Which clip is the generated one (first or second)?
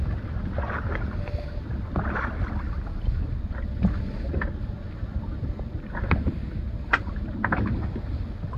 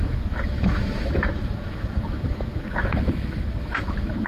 second